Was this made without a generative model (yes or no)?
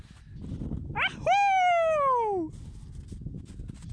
yes